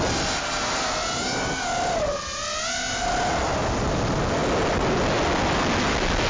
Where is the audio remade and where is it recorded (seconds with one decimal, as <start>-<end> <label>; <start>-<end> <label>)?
0.0-6.3 recorded

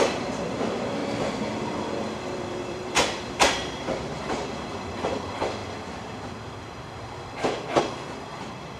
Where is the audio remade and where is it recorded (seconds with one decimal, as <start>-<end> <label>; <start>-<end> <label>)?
0.0-1.0 remade; 1.0-1.6 recorded; 1.6-5.6 remade; 5.6-7.8 recorded; 7.8-8.8 remade

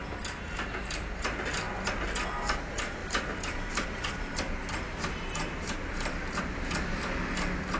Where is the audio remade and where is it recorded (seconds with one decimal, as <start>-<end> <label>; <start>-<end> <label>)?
0.0-3.0 recorded; 3.0-7.0 remade; 7.0-7.8 recorded

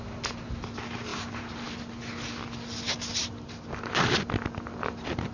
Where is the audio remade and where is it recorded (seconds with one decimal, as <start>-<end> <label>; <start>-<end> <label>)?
0.0-1.1 recorded; 1.1-1.6 remade; 1.6-5.3 recorded

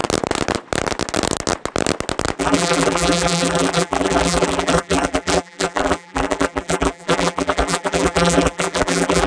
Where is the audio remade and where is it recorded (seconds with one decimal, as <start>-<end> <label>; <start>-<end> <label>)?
0.0-2.4 recorded; 2.4-9.3 remade